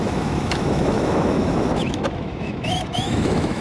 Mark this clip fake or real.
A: fake